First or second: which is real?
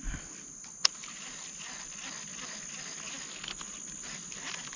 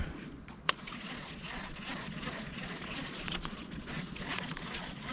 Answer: first